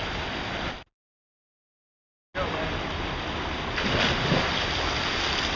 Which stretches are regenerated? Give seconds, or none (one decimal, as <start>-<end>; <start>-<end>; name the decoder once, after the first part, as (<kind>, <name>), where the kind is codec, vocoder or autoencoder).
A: none